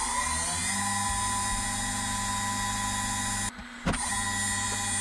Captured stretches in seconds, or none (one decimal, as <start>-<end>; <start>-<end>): 0.0-5.0